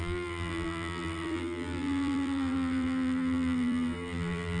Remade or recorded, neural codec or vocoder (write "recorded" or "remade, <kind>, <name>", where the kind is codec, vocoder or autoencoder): remade, vocoder, BigVGAN v2